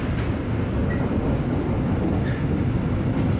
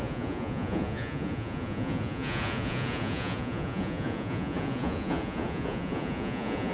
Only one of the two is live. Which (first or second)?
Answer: first